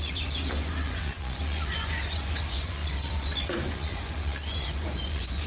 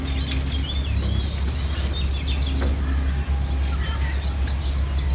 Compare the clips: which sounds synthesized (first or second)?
first